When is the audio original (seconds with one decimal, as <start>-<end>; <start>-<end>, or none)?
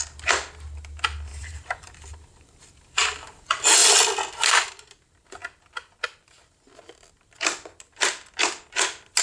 0.0-1.3; 3.4-9.2